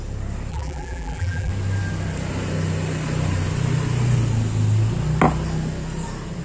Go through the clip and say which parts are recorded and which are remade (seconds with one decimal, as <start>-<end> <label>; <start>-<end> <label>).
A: 0.0-0.5 recorded; 0.5-1.5 remade; 1.5-6.4 recorded